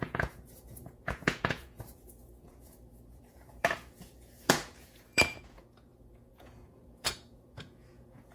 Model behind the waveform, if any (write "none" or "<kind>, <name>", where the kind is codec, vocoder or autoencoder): vocoder, Vocos